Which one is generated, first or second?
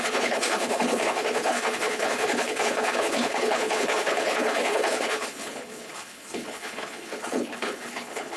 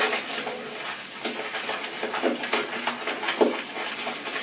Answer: first